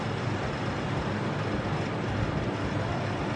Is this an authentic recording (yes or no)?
yes